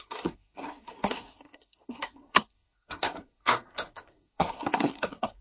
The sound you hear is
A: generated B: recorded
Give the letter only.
A